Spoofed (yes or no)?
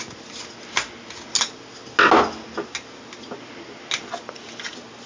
no